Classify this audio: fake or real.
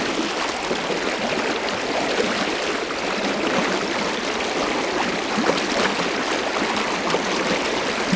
real